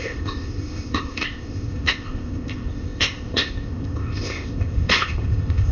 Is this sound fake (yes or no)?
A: yes